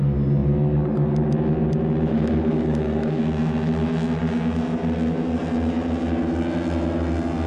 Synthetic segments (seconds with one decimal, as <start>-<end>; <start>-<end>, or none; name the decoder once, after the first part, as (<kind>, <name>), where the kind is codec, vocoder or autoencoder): 2.1-3.2 (codec, SNAC)

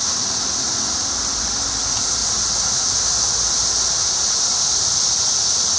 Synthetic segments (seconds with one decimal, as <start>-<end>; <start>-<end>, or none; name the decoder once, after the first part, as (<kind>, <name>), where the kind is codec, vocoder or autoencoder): none

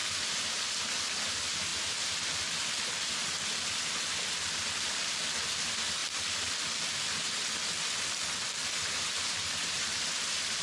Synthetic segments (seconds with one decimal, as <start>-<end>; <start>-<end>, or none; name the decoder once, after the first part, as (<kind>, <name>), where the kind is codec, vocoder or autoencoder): 1.2-6.0 (vocoder, BigVGAN v2); 8.9-10.6

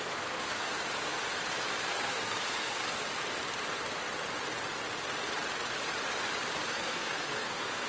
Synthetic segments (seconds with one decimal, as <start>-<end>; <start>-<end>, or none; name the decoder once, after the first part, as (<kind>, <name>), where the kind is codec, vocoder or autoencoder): 0.0-0.7 (codec, SNAC); 1.9-2.8; 6.7-7.9

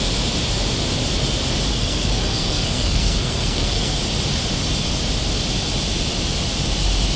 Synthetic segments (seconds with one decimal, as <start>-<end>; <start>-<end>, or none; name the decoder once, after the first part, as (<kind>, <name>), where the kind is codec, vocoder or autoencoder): 1.7-4.0 (codec, SNAC)

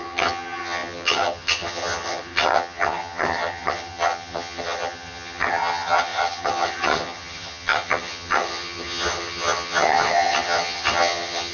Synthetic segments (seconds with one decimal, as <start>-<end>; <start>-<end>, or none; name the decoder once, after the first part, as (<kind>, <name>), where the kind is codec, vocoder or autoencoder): 0.0-11.5 (vocoder, HiFi-GAN)

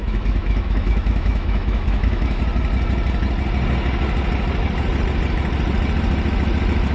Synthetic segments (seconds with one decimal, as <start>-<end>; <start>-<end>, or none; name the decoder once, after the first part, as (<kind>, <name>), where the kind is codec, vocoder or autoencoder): 0.0-2.4 (autoencoder, DAC-VAE)

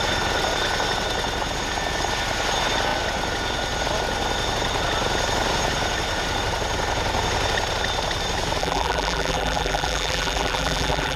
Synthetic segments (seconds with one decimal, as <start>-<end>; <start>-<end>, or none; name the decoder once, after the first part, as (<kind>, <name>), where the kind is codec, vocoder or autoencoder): 8.6-11.2 (vocoder, BigVGAN v2)